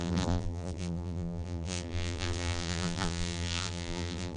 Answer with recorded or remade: remade